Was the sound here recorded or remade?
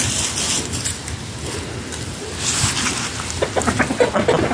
recorded